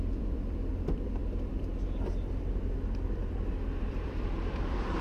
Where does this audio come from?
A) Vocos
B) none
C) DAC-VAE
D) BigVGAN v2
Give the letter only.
D